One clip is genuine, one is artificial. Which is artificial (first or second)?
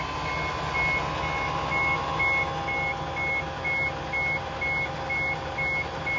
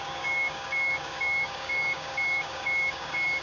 second